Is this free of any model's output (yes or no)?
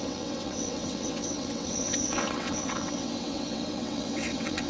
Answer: no